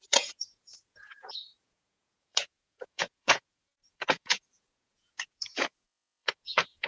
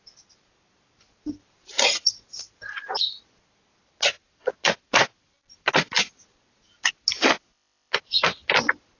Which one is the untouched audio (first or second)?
second